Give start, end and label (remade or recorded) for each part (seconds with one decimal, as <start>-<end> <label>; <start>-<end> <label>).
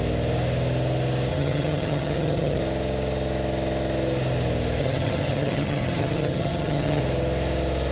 0.0-1.3 recorded; 1.3-2.6 remade; 2.6-4.8 recorded; 4.8-7.0 remade; 7.0-7.9 recorded